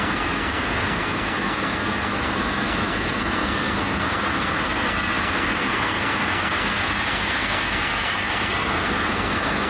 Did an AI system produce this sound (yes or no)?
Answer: yes